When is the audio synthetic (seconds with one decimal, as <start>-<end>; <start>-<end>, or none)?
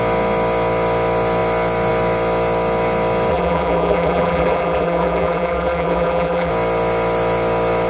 3.3-6.5